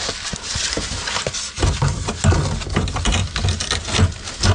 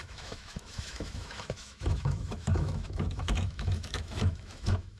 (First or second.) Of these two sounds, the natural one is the first